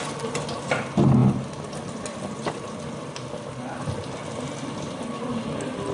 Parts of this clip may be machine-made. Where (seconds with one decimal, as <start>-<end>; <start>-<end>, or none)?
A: none